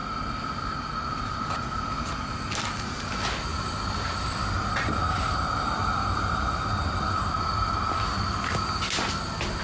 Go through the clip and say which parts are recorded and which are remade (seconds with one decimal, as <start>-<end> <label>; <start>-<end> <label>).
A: 0.0-9.6 recorded

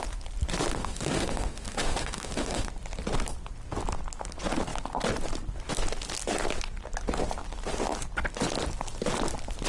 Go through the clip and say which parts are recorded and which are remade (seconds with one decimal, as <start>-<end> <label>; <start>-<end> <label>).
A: 0.0-0.8 recorded; 0.8-2.7 remade; 2.7-9.7 recorded